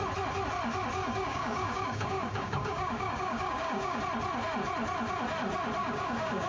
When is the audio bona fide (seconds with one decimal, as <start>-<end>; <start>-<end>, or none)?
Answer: 0.0-1.0; 4.0-5.8